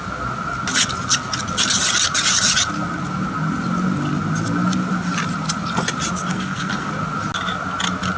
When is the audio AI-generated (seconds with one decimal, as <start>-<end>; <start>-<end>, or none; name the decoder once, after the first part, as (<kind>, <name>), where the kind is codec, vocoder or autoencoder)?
6.3-6.9 (codec, SNAC)